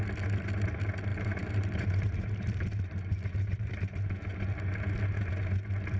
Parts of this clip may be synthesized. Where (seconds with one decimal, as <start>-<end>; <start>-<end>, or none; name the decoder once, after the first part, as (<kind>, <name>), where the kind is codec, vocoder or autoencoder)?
1.1-4.1 (vocoder, BigVGAN v2)

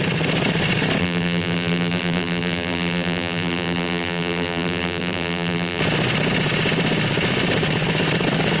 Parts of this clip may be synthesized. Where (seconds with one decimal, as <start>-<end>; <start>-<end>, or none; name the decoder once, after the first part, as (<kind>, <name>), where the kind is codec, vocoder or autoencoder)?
1.0-5.8 (vocoder, BigVGAN v2)

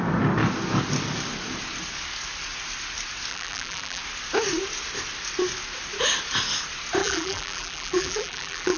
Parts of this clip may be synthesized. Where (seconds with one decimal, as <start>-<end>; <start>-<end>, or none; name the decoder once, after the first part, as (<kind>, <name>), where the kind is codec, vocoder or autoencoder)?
3.3-4.0 (vocoder, BigVGAN v2); 7.0-8.8

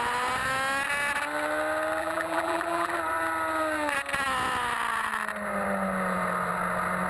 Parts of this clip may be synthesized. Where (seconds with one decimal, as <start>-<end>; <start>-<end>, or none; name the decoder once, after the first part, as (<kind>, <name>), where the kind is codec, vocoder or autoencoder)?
2.0-2.9 (vocoder, BigVGAN v2)